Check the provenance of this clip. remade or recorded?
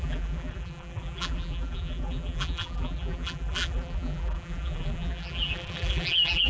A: remade